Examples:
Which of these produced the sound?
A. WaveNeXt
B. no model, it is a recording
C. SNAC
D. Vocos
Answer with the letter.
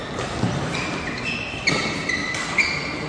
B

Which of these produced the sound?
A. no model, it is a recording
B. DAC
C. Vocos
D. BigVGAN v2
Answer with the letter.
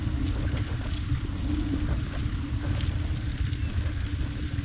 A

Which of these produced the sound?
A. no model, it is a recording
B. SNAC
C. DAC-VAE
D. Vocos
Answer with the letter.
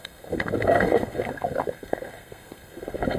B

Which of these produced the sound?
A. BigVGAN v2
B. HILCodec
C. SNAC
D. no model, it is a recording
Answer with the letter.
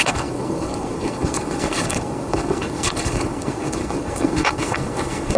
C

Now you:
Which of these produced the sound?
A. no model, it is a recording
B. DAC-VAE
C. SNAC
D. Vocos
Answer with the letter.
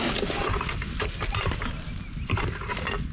A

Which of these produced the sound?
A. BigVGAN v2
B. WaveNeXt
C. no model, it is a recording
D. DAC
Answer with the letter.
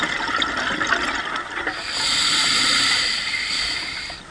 C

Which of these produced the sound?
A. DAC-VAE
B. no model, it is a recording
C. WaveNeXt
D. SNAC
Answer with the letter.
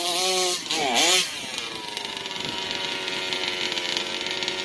B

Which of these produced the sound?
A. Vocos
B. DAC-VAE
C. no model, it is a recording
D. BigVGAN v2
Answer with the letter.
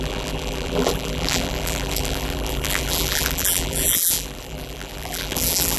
D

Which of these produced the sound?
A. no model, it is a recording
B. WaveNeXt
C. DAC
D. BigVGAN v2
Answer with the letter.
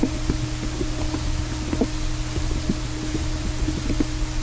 A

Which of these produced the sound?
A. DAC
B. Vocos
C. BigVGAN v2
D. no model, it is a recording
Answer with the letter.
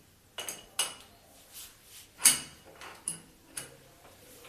D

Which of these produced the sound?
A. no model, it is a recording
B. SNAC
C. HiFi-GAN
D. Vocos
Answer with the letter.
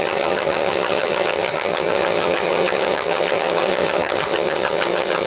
C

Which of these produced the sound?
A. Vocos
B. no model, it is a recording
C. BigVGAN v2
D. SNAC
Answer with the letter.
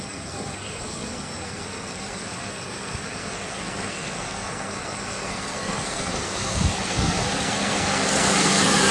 D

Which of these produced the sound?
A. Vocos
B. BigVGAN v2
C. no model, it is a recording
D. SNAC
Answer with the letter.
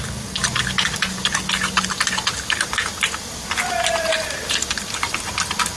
C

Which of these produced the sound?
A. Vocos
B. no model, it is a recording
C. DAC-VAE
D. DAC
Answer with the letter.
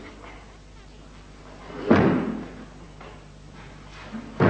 B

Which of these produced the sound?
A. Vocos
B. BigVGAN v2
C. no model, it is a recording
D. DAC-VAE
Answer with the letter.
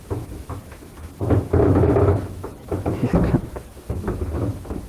D